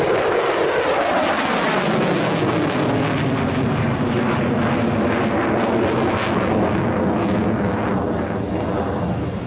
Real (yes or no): yes